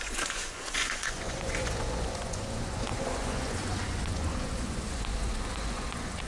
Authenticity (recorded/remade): remade